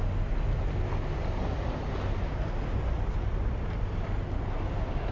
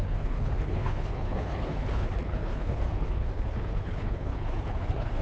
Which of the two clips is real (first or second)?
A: first